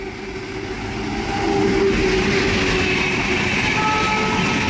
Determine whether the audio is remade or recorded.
recorded